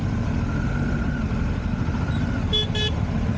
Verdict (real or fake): real